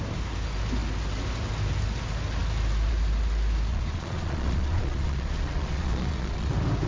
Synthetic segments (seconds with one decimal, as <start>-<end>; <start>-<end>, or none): 3.7-6.5

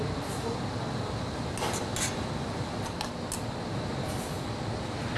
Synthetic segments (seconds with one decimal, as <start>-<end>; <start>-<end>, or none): none

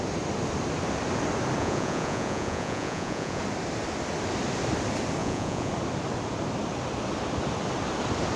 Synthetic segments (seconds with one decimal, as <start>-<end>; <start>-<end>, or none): 1.6-3.4; 5.2-5.7

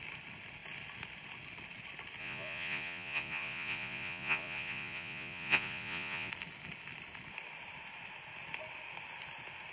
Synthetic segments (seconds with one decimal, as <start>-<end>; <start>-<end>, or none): 2.2-6.3

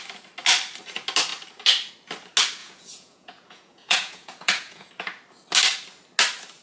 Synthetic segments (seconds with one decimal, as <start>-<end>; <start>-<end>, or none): 2.6-4.9

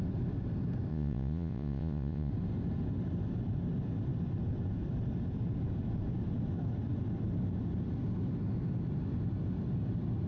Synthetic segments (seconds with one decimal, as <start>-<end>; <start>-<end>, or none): 0.9-2.3